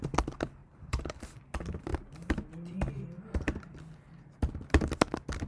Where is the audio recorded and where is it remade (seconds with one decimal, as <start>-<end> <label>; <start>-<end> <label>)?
0.0-0.6 recorded; 0.6-1.2 remade; 1.2-5.5 recorded